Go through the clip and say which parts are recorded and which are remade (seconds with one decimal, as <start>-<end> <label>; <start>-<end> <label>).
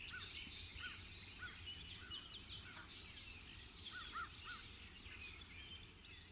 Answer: 0.0-6.3 recorded